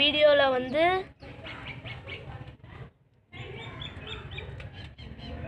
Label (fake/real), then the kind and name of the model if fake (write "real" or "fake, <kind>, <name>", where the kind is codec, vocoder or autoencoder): real